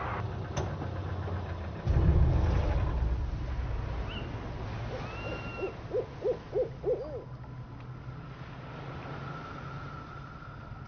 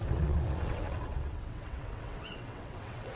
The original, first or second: first